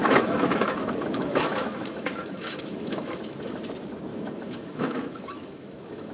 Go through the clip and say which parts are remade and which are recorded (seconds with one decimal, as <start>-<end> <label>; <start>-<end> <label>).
0.0-3.6 remade; 3.6-4.1 recorded; 4.1-6.1 remade